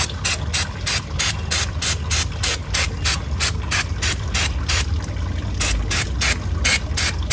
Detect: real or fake real